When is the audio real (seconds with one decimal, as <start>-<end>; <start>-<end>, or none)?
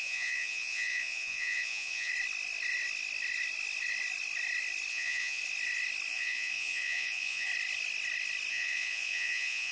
2.1-4.9; 5.4-6.1; 7.5-8.5